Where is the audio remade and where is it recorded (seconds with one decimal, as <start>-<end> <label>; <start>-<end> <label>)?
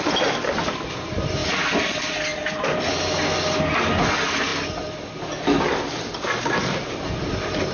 0.0-7.7 recorded